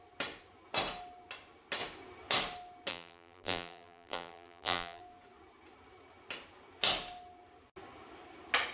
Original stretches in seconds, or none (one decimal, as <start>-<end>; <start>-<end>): 0.0-2.9; 5.0-8.7